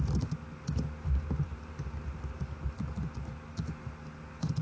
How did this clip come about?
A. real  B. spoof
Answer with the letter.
A